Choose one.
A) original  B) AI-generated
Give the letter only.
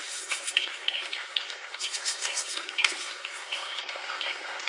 B